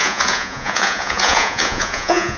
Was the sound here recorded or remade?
remade